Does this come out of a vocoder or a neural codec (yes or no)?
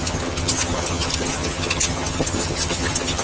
yes